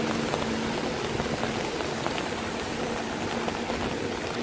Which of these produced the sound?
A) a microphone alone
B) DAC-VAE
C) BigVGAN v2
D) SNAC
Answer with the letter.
A